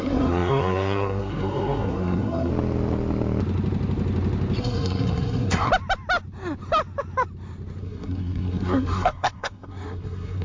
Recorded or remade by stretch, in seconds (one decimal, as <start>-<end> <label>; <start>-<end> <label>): 0.0-2.5 remade; 2.5-4.6 recorded; 4.6-5.7 remade; 5.7-7.8 recorded; 7.8-10.4 remade